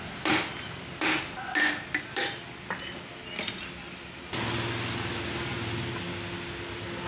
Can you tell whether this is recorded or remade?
recorded